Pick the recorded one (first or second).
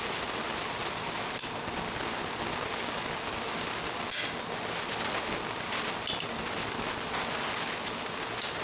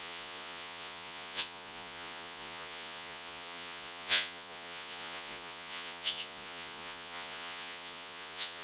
first